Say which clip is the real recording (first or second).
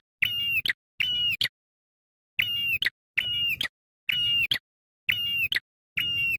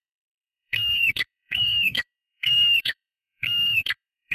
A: first